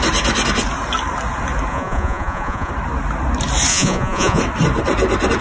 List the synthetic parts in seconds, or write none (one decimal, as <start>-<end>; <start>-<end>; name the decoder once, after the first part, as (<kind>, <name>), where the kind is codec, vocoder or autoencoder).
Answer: 1.7-2.7 (vocoder, Vocos); 3.7-4.4